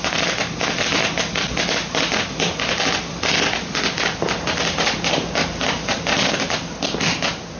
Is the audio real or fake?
real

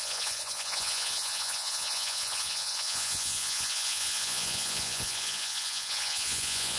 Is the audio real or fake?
fake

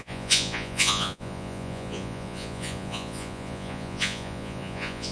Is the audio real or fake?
fake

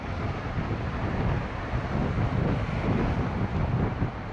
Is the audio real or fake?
real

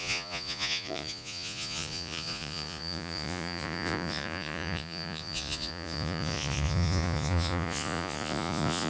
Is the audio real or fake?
fake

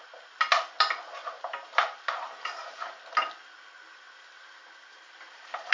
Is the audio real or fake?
real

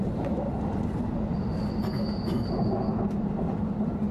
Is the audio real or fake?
real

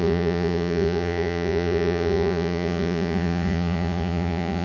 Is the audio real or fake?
fake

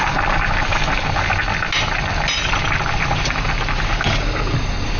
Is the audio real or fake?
real